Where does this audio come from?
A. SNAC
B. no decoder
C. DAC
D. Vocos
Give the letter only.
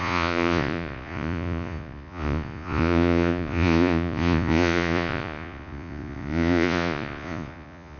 D